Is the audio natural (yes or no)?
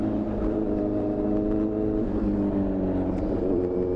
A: yes